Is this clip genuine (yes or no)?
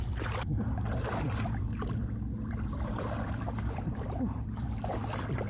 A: no